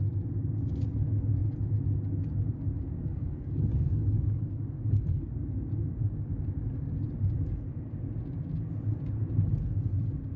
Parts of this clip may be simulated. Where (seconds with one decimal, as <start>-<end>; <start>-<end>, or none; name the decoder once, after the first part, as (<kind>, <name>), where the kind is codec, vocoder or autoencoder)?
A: 3.0-5.3 (codec, DAC)

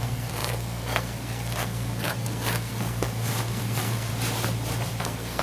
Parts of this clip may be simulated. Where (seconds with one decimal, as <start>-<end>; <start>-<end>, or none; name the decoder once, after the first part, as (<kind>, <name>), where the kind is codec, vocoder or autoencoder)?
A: 0.0-4.1 (codec, SNAC); 5.0-5.4

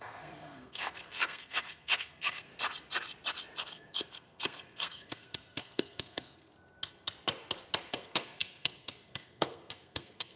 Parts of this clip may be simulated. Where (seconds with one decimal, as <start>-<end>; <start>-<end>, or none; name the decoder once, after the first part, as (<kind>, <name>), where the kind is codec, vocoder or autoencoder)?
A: 0.0-2.5 (codec, SNAC); 3.6-6.5; 7.9-10.4

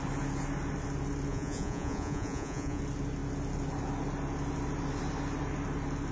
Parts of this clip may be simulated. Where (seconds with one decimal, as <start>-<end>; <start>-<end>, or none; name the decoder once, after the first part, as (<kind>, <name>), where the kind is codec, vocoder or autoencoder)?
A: 1.3-2.8 (vocoder, Vocos)

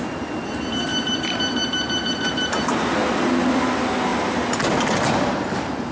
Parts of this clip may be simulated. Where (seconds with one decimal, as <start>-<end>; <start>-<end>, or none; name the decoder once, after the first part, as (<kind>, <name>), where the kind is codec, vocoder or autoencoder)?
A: none

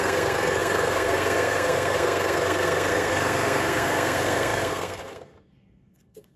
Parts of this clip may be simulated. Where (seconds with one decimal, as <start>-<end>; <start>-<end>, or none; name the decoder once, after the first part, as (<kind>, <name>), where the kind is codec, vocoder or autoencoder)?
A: 0.0-6.4 (codec, SNAC)

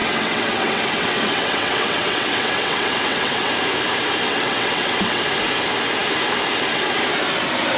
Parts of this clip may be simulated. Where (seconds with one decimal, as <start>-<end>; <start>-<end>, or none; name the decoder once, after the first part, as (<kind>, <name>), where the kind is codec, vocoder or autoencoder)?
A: 0.0-3.5 (vocoder, WaveNeXt); 4.3-5.2